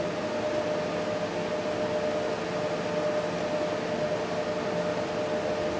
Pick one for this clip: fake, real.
real